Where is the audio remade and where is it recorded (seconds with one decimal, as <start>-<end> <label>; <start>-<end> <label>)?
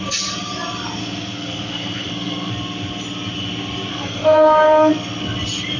0.0-1.0 recorded; 1.0-2.5 remade; 2.5-3.9 recorded; 3.9-4.9 remade; 4.9-5.8 recorded